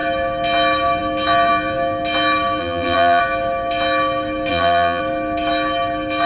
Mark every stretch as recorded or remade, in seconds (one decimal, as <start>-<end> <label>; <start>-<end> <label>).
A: 0.0-2.6 recorded; 2.6-3.2 remade; 3.2-4.5 recorded; 4.5-5.0 remade; 5.0-6.3 recorded